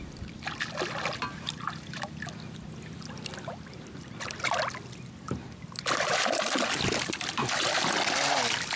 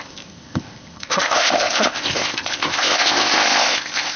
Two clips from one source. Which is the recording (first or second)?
first